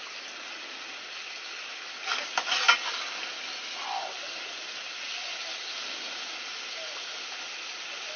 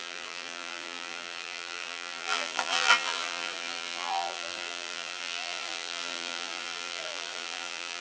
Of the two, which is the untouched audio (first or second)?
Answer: first